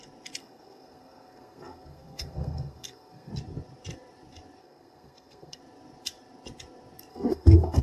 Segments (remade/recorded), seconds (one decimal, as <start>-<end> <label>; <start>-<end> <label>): 0.0-0.4 recorded; 0.4-3.3 remade; 3.3-4.6 recorded; 4.6-5.6 remade; 5.6-7.1 recorded; 7.1-7.8 remade